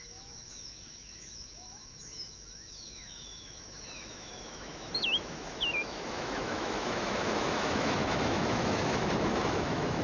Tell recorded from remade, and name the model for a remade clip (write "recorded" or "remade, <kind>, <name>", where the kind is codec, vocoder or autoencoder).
remade, autoencoder, DAC-VAE